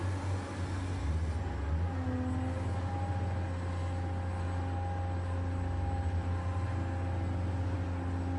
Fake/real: real